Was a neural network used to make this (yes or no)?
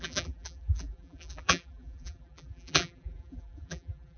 yes